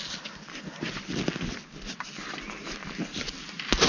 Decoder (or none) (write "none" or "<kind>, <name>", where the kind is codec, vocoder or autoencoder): vocoder, BigVGAN v2